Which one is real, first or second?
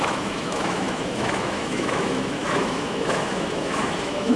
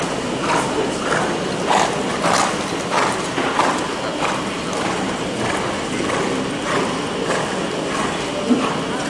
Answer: second